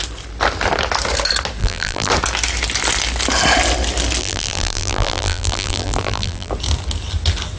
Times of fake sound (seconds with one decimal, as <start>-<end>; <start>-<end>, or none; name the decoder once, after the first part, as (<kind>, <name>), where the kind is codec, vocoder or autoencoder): 1.6-2.1 (vocoder, BigVGAN v2); 4.2-6.5